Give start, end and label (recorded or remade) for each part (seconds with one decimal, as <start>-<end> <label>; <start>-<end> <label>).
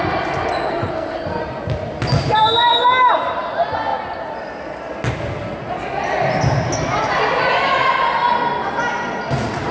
0.0-0.7 recorded; 0.7-1.4 remade; 1.4-9.7 recorded